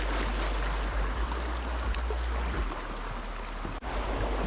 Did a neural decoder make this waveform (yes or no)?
no